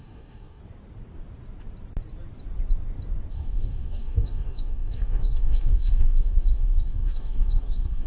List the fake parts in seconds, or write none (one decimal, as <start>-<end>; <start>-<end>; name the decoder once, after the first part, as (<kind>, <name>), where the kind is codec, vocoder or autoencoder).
0.0-0.6 (codec, DAC); 3.3-8.1